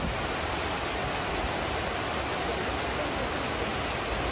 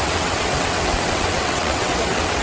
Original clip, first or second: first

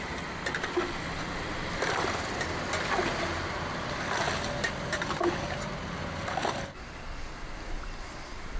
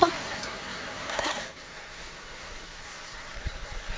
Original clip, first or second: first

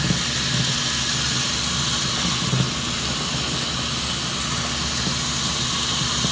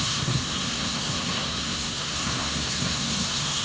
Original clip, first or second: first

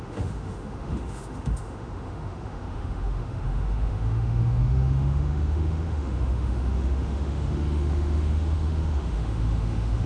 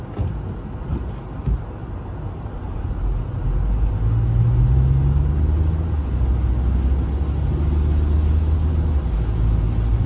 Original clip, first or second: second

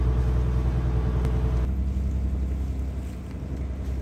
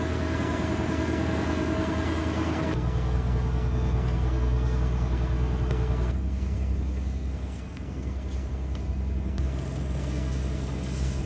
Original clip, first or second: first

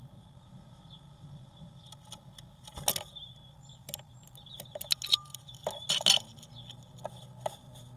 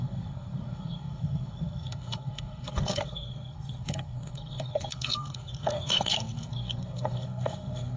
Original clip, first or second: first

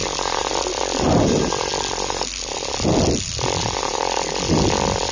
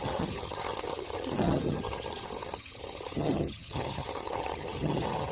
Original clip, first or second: first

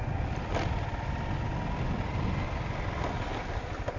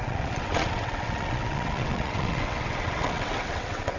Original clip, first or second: first